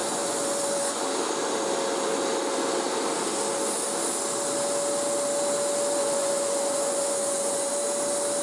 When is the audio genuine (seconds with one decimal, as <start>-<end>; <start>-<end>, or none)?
1.0-6.0; 7.7-8.4